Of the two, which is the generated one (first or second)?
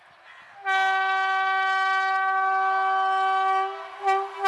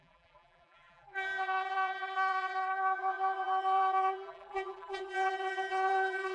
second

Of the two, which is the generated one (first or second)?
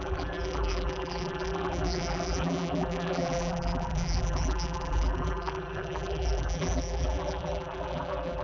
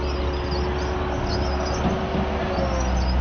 first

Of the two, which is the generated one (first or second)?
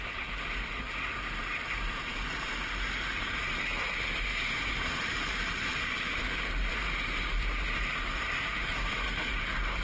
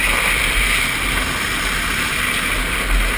first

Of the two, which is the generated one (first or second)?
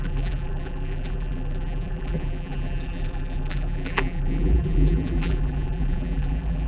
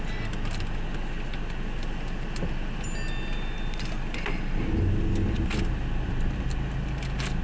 first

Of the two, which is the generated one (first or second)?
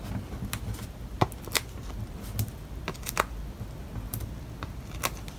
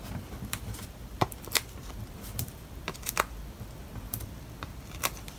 second